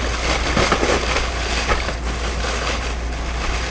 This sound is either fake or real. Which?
real